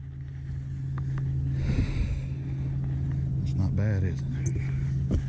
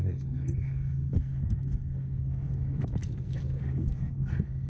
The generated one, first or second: second